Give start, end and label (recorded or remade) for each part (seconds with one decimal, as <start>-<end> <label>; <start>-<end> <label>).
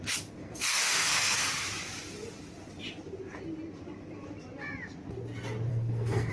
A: 0.0-0.4 recorded; 0.4-1.5 remade; 1.5-5.7 recorded; 5.7-6.3 remade